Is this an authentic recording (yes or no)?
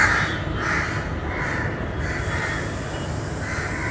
yes